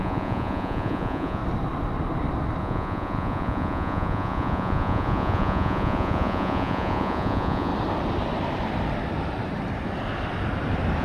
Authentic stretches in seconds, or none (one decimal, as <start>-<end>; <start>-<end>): 1.4-2.6; 7.7-11.0

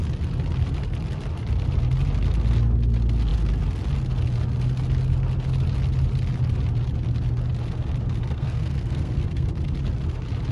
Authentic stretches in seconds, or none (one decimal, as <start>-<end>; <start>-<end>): 0.0-8.2; 9.5-10.5

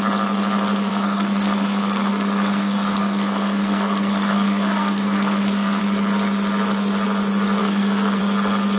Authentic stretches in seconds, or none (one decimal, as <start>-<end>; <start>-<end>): 0.0-0.9; 5.8-7.6; 8.2-8.8

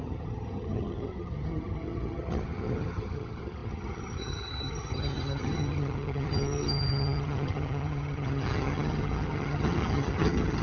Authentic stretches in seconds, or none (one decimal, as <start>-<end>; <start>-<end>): none